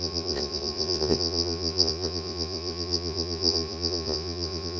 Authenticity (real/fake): fake